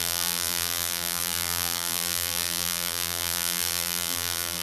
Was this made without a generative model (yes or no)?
no